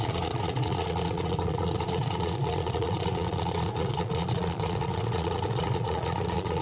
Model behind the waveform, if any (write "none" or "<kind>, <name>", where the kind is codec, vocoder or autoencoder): vocoder, Vocos